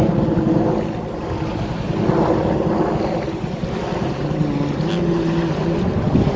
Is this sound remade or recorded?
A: recorded